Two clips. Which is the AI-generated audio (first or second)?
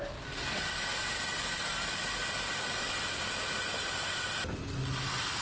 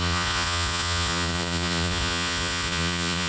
second